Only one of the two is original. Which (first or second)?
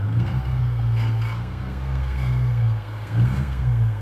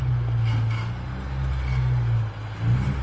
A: second